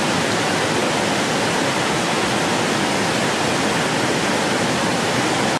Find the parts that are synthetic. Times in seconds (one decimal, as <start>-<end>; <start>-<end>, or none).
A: 0.0-0.8; 4.2-5.6